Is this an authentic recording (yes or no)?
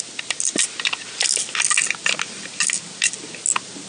yes